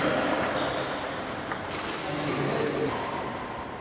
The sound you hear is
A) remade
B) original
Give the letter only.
B